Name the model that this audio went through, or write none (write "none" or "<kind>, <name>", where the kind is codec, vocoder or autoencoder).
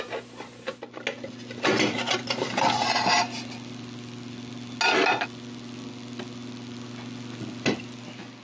none